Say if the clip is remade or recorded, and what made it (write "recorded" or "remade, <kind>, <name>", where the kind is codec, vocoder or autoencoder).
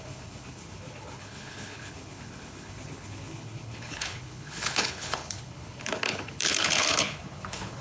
remade, codec, HILCodec